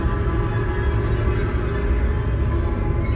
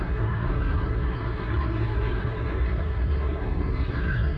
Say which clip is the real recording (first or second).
first